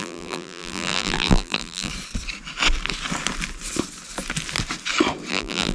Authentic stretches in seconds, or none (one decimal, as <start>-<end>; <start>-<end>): 1.9-5.3